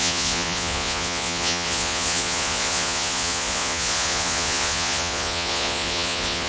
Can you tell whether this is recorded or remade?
remade